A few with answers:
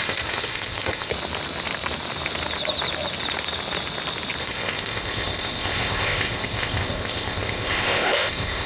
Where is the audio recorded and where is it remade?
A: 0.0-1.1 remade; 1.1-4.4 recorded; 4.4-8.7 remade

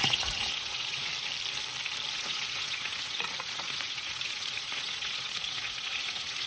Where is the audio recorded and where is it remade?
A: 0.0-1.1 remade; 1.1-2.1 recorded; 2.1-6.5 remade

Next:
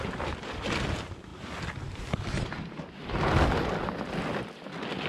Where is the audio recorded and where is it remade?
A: 0.0-5.1 recorded